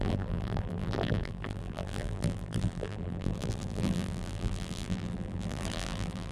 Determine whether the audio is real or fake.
fake